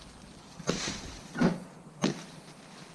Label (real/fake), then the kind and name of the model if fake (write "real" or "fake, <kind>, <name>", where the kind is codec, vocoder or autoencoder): real